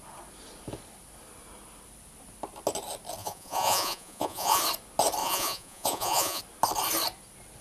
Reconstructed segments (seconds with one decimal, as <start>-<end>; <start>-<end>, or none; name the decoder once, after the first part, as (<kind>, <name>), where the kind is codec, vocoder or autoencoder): 3.2-4.6 (vocoder, Vocos); 5.2-6.4